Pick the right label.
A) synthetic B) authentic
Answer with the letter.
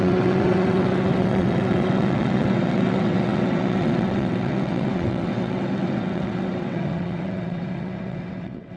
A